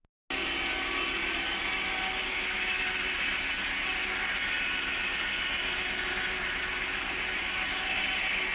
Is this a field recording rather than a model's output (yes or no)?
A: yes